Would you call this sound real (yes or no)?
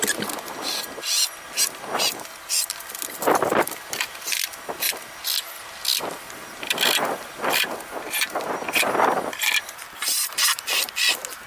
yes